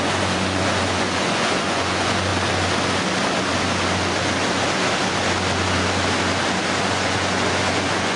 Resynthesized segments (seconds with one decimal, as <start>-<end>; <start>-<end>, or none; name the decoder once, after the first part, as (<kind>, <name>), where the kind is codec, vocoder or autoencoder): 0.0-2.3 (vocoder, Vocos); 6.8-8.2